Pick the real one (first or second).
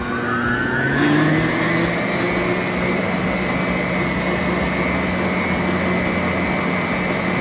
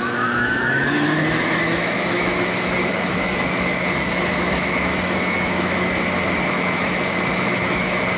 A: first